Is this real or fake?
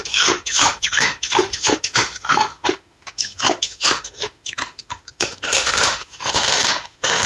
fake